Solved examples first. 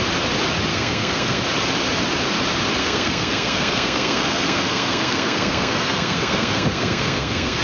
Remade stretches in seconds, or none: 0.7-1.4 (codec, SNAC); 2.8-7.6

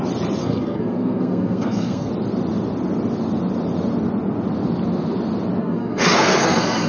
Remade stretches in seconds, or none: 0.4-2.1 (codec, SNAC); 5.6-6.9

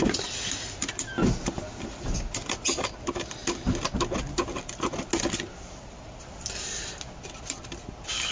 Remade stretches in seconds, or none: none

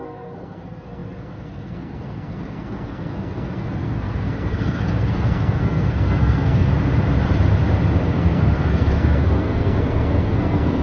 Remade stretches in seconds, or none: 0.0-6.7 (codec, SNAC); 8.0-10.8

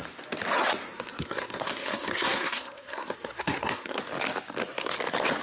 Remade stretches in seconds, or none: 0.8-4.0 (codec, SNAC)

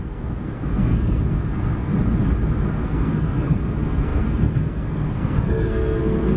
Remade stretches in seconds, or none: 0.0-1.9 (codec, SNAC); 2.6-6.4